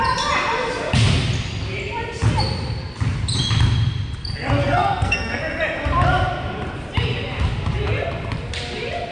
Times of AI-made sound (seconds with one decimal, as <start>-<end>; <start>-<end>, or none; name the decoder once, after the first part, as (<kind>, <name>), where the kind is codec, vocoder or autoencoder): 4.6-5.4 (codec, SNAC)